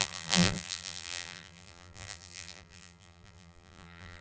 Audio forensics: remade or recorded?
remade